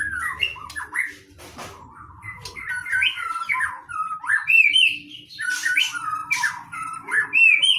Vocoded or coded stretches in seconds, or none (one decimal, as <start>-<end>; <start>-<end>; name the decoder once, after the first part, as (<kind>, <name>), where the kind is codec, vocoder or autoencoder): 0.0-2.4 (vocoder, BigVGAN v2); 3.1-6.2